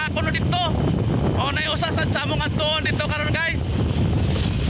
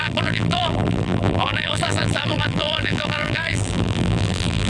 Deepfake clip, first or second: second